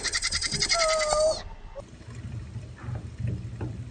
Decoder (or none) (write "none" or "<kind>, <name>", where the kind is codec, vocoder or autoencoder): none